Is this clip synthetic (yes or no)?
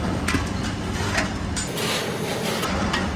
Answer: no